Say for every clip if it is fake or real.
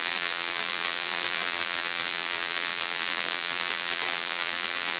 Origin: fake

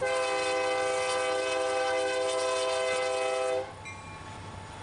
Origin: real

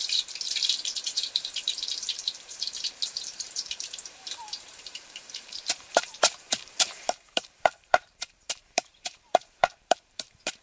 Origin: fake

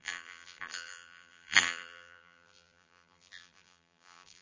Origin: fake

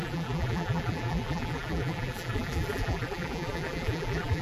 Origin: fake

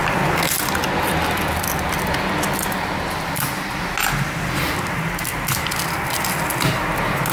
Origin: real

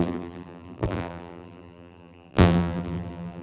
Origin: fake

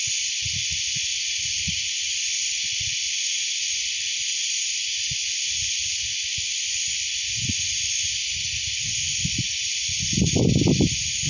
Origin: real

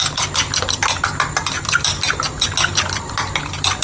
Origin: real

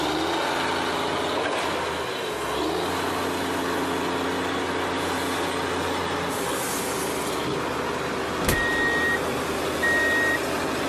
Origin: real